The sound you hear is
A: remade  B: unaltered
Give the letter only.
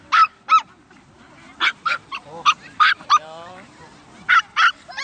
A